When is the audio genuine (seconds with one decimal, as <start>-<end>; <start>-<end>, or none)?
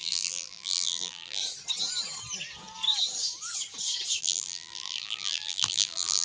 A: 1.4-4.2